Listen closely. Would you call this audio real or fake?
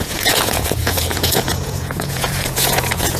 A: fake